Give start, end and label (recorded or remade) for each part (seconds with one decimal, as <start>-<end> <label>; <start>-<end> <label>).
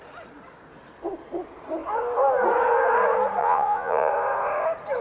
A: 0.0-3.4 recorded; 3.4-4.1 remade; 4.1-5.0 recorded